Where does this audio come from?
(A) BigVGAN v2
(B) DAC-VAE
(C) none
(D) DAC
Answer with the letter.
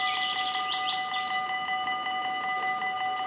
C